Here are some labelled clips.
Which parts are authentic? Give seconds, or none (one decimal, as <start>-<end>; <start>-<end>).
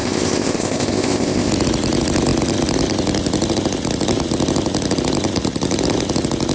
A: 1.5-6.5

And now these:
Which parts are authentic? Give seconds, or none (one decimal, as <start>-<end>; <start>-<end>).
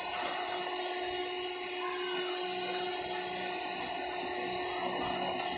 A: 0.0-5.6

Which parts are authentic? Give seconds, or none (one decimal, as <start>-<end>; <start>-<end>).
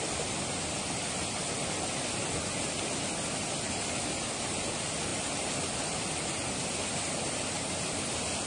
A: 0.0-8.5